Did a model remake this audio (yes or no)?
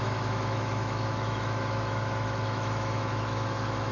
yes